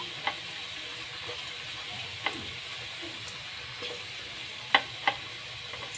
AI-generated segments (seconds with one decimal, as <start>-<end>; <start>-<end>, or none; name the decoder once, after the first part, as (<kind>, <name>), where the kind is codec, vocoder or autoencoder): none

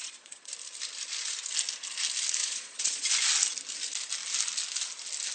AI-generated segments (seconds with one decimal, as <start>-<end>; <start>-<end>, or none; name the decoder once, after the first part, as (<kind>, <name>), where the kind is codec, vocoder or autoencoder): 0.0-0.5 (vocoder, Vocos); 2.4-3.1

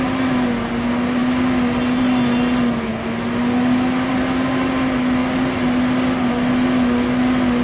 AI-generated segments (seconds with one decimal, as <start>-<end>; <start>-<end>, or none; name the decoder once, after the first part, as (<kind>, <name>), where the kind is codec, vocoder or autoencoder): none